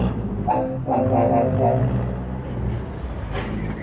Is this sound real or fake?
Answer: real